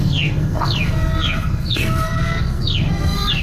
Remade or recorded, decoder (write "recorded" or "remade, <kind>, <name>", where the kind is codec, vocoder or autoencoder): remade, codec, SNAC